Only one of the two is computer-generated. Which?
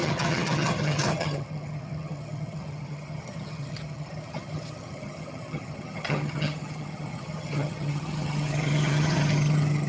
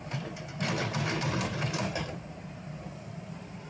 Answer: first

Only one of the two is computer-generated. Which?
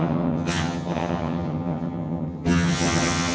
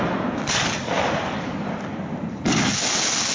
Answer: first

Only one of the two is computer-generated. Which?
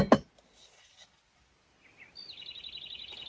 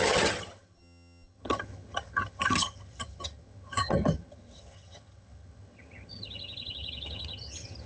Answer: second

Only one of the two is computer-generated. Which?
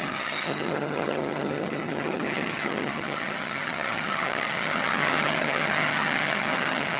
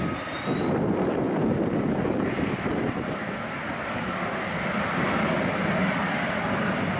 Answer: first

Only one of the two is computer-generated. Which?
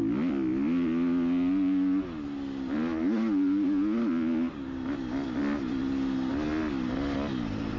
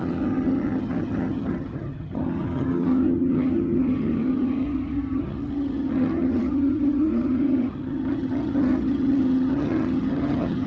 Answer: second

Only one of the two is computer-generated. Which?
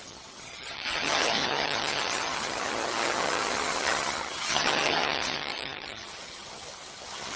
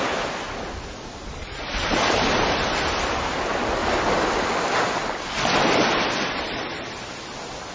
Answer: first